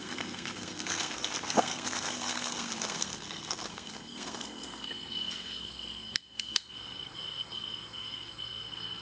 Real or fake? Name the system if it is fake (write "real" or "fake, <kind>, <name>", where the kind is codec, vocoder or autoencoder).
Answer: fake, codec, SNAC